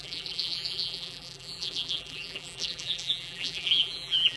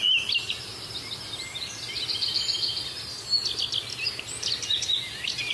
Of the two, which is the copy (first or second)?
first